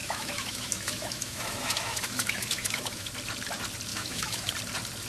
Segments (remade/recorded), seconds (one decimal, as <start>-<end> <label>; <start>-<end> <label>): 0.0-3.1 remade; 3.1-3.9 recorded; 3.9-4.5 remade; 4.5-5.1 recorded